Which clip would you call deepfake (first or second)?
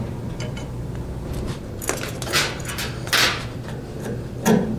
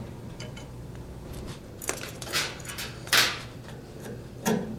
second